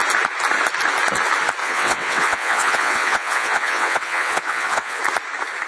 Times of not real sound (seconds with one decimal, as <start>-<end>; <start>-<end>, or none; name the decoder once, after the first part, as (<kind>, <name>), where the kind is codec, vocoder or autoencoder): 1.6-5.0 (vocoder, WaveNeXt)